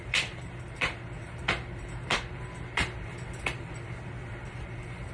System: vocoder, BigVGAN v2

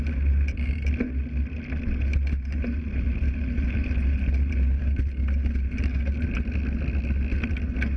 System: none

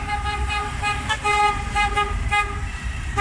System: vocoder, BigVGAN v2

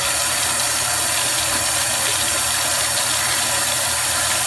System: none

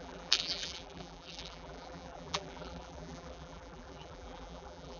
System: vocoder, BigVGAN v2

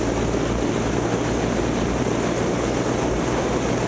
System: none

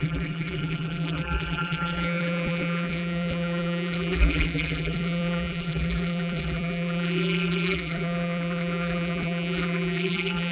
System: vocoder, BigVGAN v2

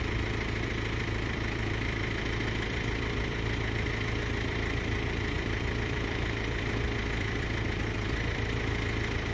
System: vocoder, BigVGAN v2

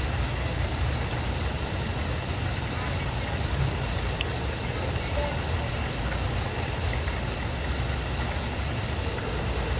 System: none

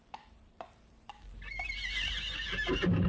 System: vocoder, BigVGAN v2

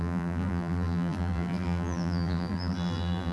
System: vocoder, BigVGAN v2